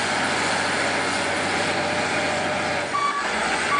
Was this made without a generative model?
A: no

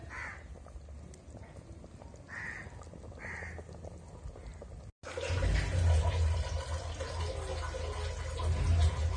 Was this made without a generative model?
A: yes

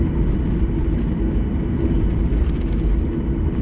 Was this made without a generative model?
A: yes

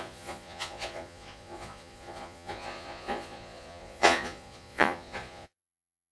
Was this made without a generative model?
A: no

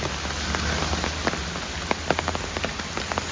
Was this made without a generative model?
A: yes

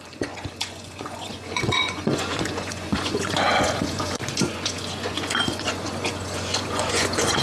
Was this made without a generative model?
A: no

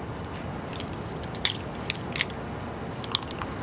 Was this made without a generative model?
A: yes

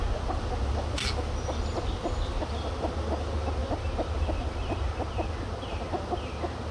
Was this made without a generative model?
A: yes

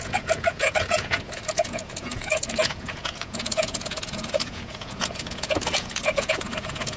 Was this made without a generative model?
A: no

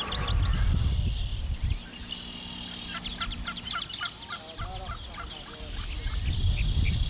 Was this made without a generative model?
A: yes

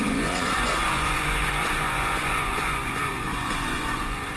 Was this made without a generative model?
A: no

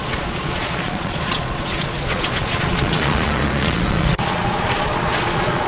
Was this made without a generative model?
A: no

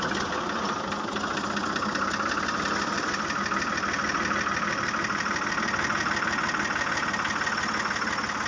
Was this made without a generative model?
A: yes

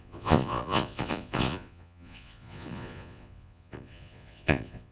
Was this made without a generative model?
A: no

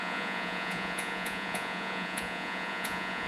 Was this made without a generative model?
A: no